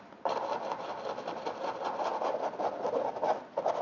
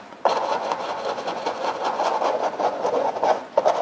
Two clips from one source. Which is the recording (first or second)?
first